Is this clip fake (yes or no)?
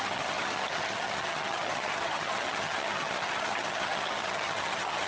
yes